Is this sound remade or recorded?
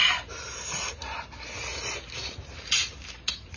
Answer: remade